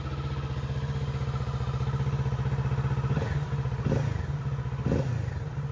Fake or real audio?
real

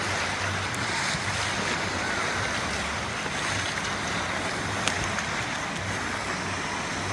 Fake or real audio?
real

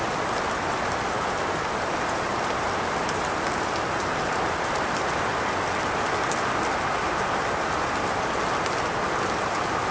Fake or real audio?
real